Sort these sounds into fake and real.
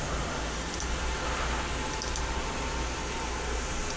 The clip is real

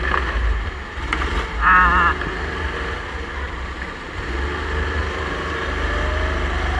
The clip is real